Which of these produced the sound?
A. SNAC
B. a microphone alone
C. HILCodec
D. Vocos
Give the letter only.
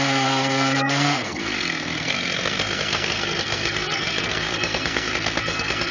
A